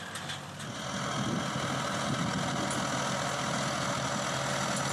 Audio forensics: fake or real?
real